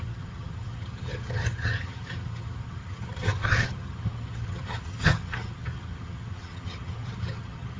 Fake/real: fake